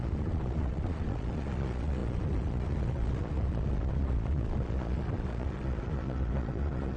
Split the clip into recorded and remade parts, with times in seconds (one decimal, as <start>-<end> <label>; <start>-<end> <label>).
0.0-7.0 remade